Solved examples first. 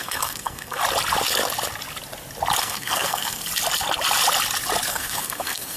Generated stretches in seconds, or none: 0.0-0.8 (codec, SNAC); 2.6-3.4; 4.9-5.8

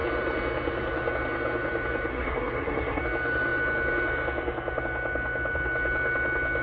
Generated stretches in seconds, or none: 2.1-3.0 (codec, SNAC)

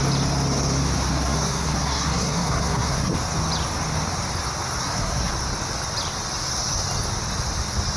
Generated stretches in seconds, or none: 1.1-3.1 (codec, SNAC); 4.8-5.3

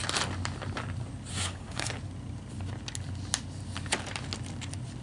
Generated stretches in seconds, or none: 1.3-1.9 (codec, SNAC)

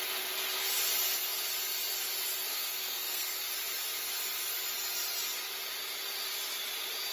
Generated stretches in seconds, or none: 2.5-3.4 (codec, SNAC)

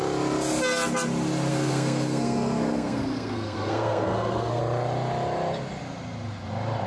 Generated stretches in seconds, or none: 1.5-4.6 (codec, SNAC)

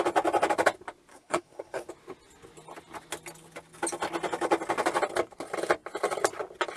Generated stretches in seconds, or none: 1.1-1.9 (codec, SNAC)